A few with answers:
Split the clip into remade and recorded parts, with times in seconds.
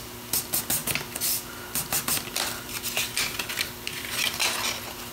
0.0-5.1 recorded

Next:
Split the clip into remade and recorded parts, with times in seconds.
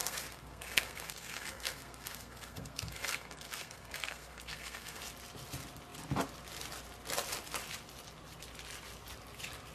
0.0-5.0 remade; 5.0-9.7 recorded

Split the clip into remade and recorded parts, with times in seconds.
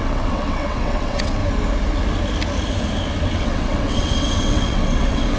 0.0-1.4 remade; 1.4-3.3 recorded; 3.3-5.4 remade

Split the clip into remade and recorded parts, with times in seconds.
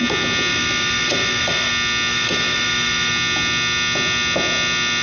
0.0-0.5 recorded; 0.5-1.7 remade; 1.7-2.1 recorded; 2.1-3.1 remade; 3.1-5.0 recorded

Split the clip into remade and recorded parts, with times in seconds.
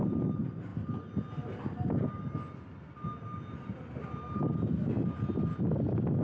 0.0-6.2 recorded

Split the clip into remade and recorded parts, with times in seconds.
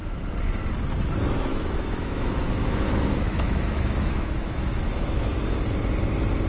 0.0-1.5 recorded; 1.5-5.4 remade; 5.4-6.5 recorded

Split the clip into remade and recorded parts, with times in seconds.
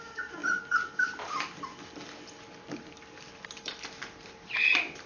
0.0-5.1 recorded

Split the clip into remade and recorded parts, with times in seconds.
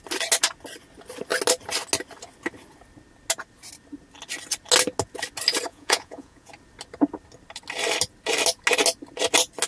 0.0-5.7 recorded; 5.7-6.5 remade; 6.5-9.7 recorded